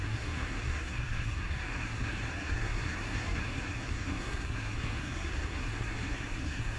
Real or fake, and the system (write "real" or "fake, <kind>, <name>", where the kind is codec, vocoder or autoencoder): fake, codec, SNAC